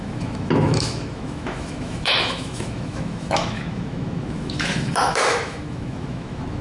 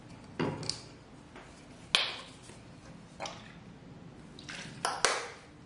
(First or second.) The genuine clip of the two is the second